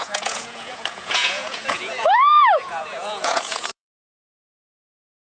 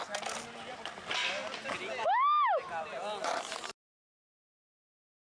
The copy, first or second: first